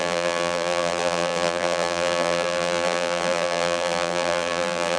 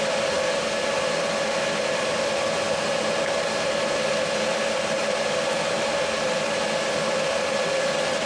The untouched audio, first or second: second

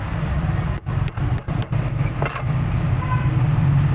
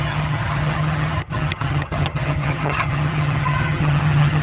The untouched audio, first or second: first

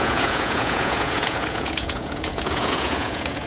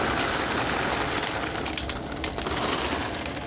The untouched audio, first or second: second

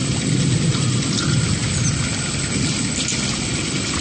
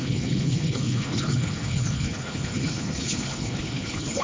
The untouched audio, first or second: first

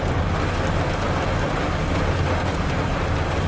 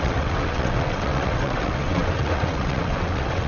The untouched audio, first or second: first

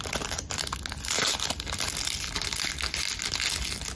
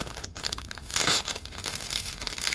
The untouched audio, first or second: first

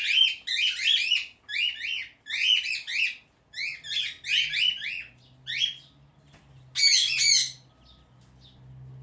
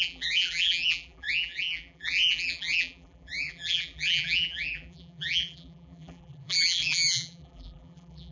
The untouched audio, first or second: first